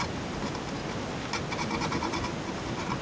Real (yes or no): yes